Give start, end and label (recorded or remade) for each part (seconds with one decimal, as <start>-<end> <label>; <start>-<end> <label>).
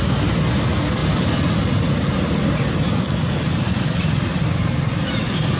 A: 0.0-5.6 recorded